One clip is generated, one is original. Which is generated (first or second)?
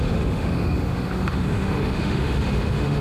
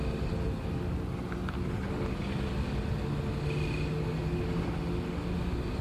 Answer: first